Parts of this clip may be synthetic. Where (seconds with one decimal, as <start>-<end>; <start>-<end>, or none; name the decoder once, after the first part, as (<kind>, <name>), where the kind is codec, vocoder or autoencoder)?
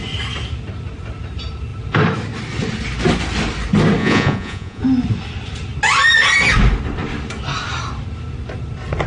4.0-4.8 (vocoder, Vocos)